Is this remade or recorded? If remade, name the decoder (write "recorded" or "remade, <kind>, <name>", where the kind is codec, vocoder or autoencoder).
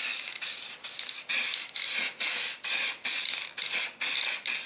recorded